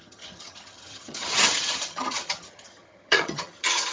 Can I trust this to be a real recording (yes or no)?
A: no